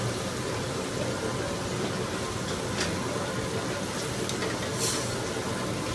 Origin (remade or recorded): recorded